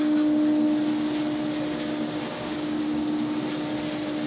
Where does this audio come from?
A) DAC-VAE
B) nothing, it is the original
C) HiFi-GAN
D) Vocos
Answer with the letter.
B